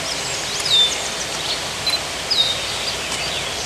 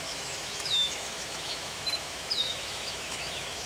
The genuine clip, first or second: first